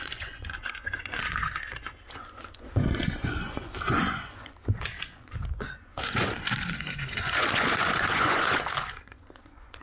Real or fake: fake